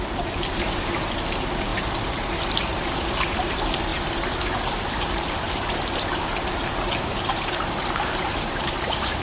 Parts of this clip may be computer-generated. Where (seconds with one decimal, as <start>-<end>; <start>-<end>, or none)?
0.0-9.2